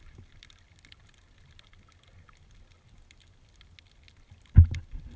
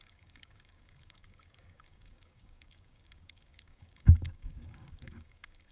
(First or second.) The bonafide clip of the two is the first